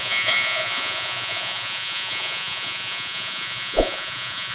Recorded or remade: remade